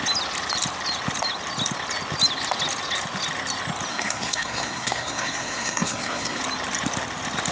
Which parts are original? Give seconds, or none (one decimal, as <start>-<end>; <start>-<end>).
0.0-3.9; 6.4-7.5